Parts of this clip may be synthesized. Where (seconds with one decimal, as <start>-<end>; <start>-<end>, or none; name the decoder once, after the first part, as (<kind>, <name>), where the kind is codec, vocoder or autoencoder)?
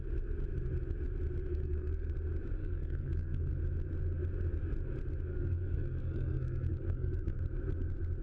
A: 1.5-2.1 (codec, SNAC); 2.6-3.5; 5.3-7.4